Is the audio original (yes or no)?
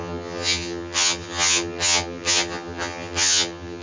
no